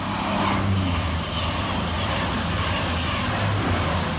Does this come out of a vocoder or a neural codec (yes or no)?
no